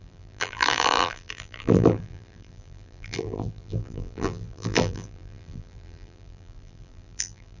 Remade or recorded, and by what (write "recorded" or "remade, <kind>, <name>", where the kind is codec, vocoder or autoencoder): remade, vocoder, BigVGAN v2